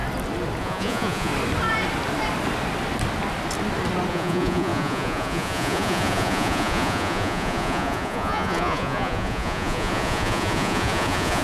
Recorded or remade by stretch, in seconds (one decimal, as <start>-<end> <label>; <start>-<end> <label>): 0.0-0.6 recorded; 0.6-1.3 remade; 1.3-4.1 recorded; 4.1-11.4 remade

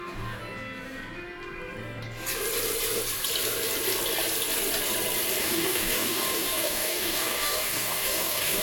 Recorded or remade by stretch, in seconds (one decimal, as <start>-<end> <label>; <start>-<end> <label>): 0.0-0.4 remade; 0.4-5.4 recorded; 5.4-8.6 remade